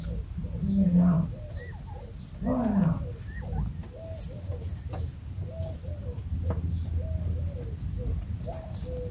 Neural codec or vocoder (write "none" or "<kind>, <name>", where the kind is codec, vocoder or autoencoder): none